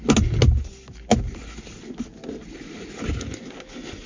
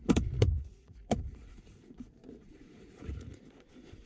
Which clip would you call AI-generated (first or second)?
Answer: second